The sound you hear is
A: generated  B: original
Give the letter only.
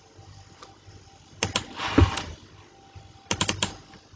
B